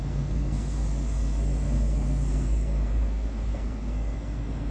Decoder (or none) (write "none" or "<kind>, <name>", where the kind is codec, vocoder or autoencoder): codec, SNAC